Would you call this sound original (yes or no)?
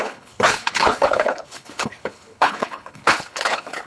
no